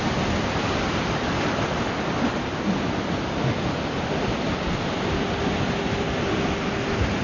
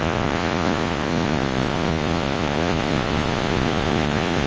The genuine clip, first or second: first